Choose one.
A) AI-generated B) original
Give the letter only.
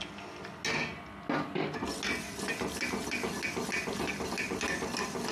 B